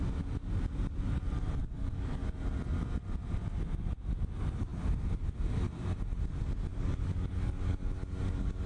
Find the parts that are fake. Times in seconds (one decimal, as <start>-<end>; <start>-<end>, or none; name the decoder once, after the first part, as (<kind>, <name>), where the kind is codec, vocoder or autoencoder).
1.6-2.2 (codec, DAC); 6.7-8.7